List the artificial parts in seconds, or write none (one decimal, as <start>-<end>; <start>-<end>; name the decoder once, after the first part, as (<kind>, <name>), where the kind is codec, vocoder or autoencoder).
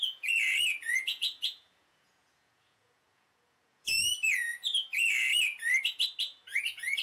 0.0-5.5 (vocoder, Vocos); 6.2-7.0